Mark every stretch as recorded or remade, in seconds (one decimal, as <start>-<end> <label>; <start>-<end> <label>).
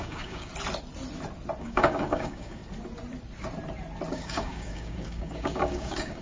0.0-0.5 remade; 0.5-1.6 recorded; 1.6-2.6 remade; 2.6-4.1 recorded; 4.1-6.2 remade